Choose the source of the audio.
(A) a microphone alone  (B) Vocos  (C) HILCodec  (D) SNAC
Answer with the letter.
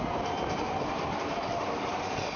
A